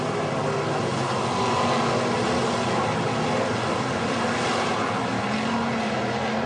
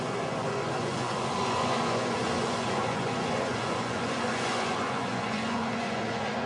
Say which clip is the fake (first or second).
second